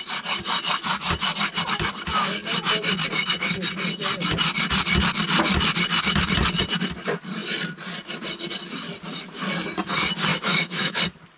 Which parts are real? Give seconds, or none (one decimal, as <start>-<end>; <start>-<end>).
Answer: 0.0-10.3; 11.0-11.4